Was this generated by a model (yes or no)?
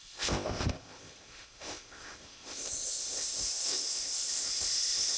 yes